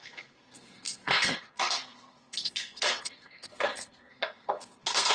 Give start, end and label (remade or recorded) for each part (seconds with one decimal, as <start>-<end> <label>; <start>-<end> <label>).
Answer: 0.0-5.1 remade